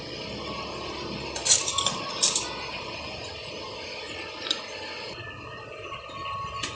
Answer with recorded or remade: recorded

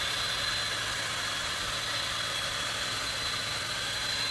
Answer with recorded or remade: recorded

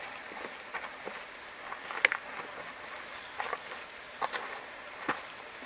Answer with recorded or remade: recorded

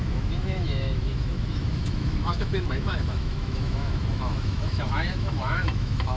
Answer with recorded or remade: remade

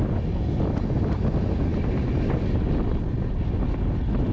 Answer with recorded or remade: recorded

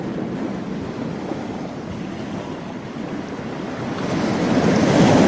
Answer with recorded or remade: recorded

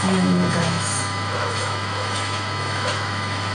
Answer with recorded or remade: remade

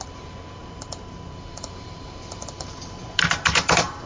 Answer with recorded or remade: remade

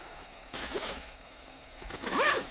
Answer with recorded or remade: remade